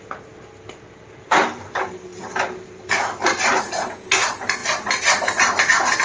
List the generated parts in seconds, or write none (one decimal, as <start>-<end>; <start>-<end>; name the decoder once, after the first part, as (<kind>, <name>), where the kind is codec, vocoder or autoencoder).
none